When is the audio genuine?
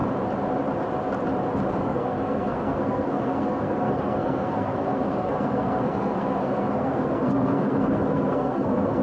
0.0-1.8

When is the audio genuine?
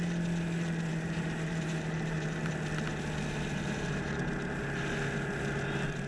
0.0-0.9; 2.5-6.1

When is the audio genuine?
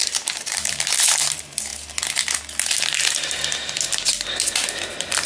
1.7-5.3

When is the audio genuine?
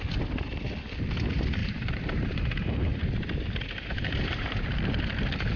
0.0-1.6; 5.0-5.6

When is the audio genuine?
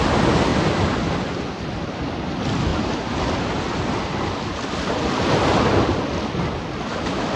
0.0-7.4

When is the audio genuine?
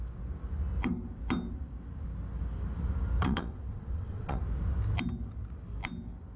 0.0-3.2; 4.4-6.4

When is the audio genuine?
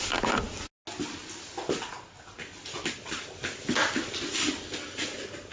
0.0-5.5